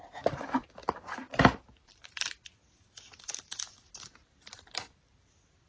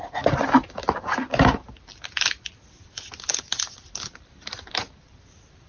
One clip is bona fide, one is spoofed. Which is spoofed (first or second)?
first